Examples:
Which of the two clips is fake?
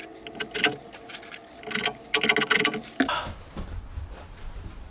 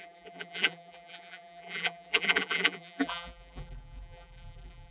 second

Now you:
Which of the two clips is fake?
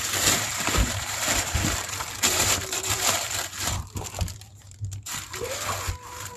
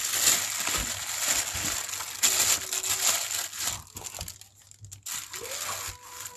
first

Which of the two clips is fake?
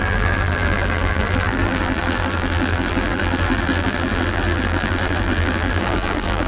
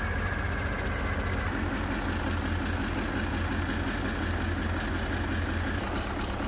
first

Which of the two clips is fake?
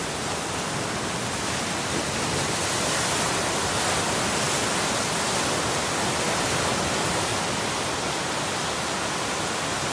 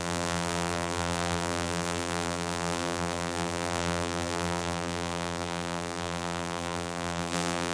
second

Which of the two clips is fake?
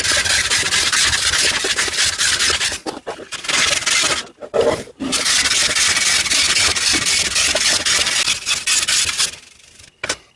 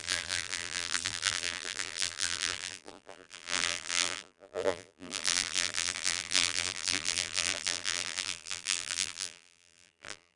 second